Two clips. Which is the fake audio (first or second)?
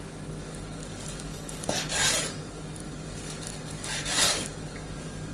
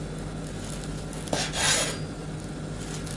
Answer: first